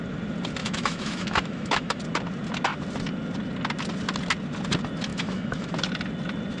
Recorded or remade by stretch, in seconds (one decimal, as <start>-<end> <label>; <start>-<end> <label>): 0.0-0.6 recorded; 0.6-2.0 remade; 2.0-5.1 recorded; 5.1-5.7 remade; 5.7-6.6 recorded